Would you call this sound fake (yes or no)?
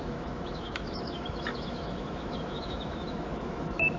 yes